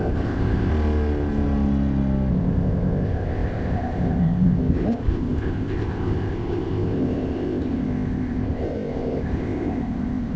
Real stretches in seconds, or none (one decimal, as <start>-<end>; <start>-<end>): 0.7-2.3